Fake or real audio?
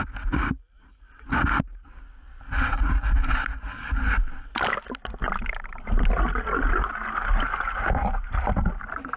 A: real